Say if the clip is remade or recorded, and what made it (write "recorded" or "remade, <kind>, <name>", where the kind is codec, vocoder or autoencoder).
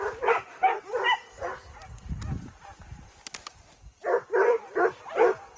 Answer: recorded